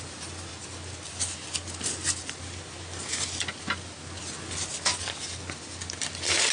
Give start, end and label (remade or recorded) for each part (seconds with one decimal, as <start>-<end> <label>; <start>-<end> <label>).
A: 0.0-6.5 recorded